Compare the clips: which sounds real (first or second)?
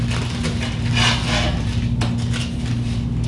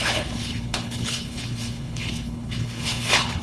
first